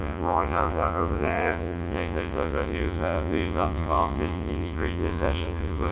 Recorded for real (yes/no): no